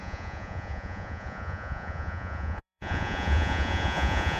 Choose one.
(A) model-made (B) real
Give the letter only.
A